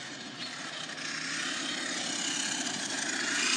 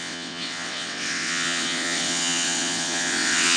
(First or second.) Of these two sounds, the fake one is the second